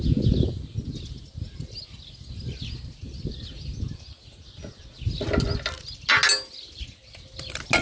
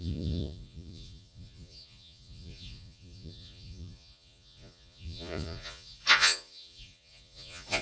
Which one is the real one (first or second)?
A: first